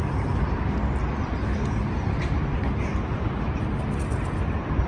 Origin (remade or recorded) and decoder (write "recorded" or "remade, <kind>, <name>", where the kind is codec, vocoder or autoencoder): recorded